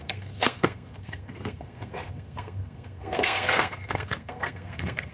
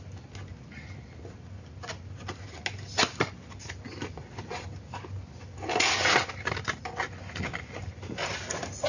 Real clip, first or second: second